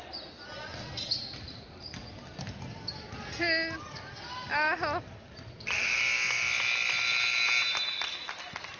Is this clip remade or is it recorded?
recorded